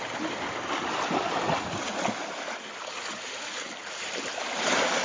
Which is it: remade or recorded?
recorded